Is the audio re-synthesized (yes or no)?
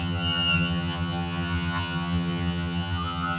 yes